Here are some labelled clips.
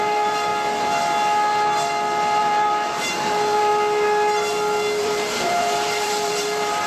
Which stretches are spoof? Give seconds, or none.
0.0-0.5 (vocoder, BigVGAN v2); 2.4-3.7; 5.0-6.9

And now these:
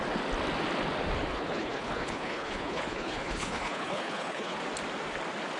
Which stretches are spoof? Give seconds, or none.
1.3-4.6 (codec, HILCodec)

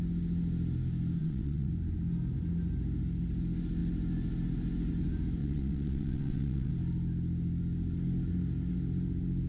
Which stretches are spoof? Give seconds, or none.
1.2-1.7 (vocoder, WaveNeXt); 5.4-6.7

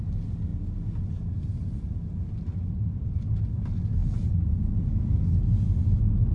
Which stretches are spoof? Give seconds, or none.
none